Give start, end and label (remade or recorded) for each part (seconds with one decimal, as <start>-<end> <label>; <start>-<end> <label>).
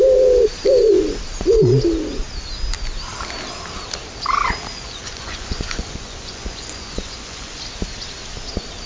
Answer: 0.0-4.7 recorded; 4.7-7.6 remade; 7.6-8.9 recorded